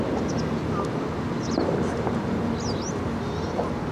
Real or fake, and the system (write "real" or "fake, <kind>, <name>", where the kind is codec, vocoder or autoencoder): real